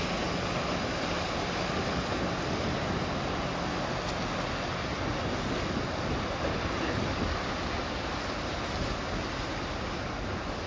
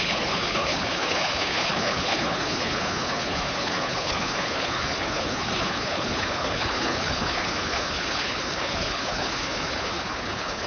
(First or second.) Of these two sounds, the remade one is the second